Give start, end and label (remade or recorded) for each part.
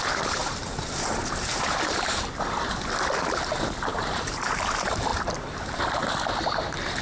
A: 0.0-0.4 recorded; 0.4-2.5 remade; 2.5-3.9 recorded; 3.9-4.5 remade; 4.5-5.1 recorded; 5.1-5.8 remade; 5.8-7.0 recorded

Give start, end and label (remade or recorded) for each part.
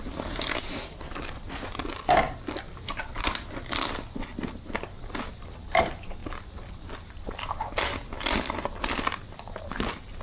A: 0.0-10.2 recorded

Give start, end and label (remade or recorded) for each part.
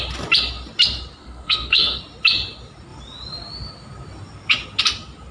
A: 0.0-1.2 recorded; 1.2-2.0 remade; 2.0-5.3 recorded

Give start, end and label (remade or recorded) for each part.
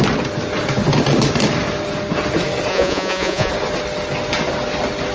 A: 0.0-2.7 recorded; 2.7-3.5 remade; 3.5-5.1 recorded